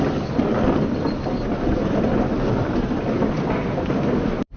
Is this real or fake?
real